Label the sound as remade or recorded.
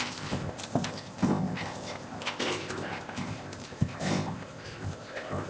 remade